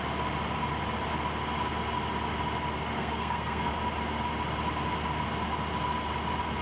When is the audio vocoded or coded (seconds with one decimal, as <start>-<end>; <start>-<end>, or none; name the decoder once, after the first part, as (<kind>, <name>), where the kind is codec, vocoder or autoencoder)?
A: 2.9-3.7 (codec, SNAC)

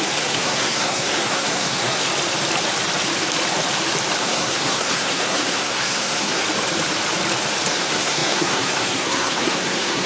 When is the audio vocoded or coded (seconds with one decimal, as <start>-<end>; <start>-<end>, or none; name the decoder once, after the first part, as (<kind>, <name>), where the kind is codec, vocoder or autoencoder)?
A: 0.0-2.1 (codec, SNAC); 4.2-6.4; 7.7-10.1

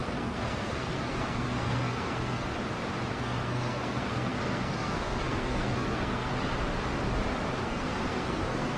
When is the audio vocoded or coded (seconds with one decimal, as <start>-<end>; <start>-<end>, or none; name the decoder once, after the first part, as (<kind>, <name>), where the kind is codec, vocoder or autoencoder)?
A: 0.0-2.5 (codec, SNAC); 3.1-6.3; 7.6-8.8

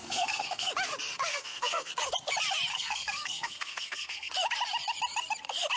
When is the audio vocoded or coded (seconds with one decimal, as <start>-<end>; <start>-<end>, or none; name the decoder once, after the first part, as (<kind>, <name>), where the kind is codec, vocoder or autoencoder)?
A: 0.0-0.7 (codec, SNAC); 1.3-1.9; 2.7-4.3